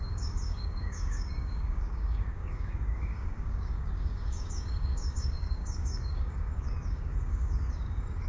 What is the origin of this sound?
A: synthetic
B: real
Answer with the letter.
A